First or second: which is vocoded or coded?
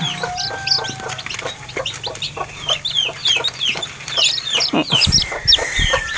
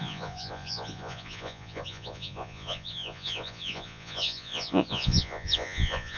second